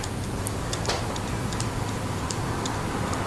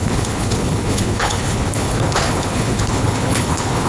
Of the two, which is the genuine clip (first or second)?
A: first